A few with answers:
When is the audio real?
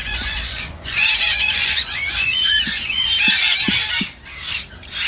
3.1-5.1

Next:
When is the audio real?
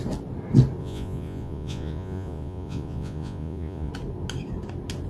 0.0-0.8; 3.9-5.1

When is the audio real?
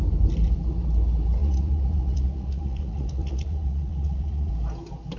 0.0-1.4; 4.5-5.2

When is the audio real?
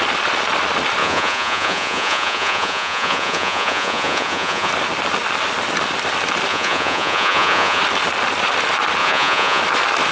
0.0-1.0; 4.7-6.5; 7.8-9.0; 9.6-10.1